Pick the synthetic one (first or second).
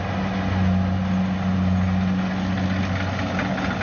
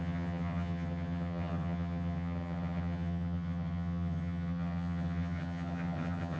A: second